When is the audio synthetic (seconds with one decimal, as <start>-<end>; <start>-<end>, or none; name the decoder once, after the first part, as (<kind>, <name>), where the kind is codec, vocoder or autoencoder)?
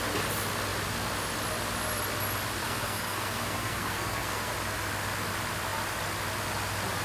2.6-4.5 (codec, SNAC)